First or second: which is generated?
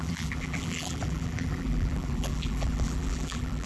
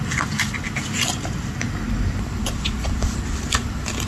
first